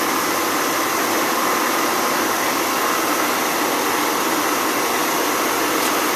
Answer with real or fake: real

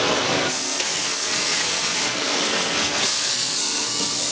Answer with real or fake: fake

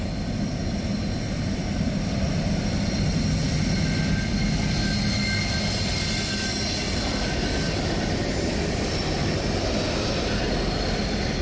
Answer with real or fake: real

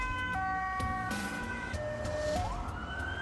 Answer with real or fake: real